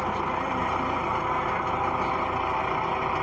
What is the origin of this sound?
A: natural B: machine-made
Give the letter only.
A